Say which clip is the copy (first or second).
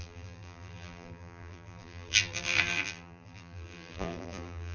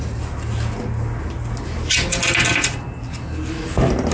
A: first